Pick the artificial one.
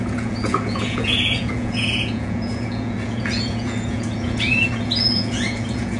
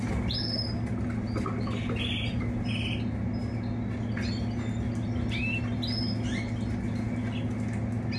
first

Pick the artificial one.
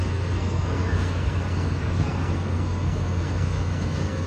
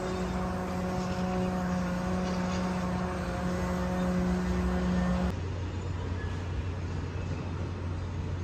first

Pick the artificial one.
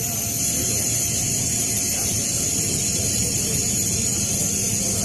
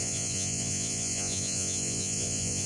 second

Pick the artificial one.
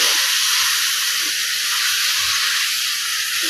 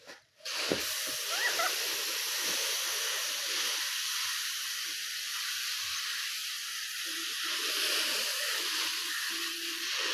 second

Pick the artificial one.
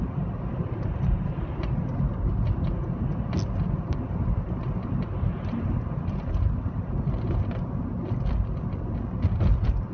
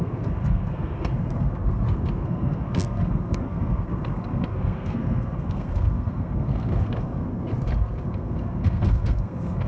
second